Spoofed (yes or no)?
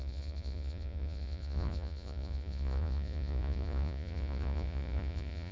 yes